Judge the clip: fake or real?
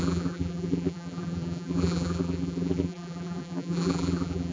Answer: fake